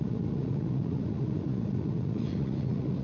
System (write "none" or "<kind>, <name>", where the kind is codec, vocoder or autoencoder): vocoder, Vocos